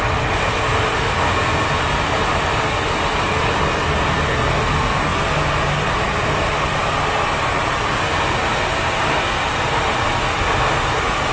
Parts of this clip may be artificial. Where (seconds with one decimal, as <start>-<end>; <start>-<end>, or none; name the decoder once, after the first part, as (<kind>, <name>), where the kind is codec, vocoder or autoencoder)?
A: none